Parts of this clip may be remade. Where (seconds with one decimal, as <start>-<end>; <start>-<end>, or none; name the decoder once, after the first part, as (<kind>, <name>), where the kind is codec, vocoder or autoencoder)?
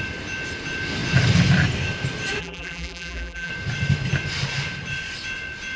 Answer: 2.4-3.5 (vocoder, BigVGAN v2)